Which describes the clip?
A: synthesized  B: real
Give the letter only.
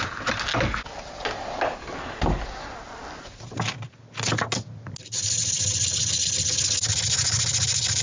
B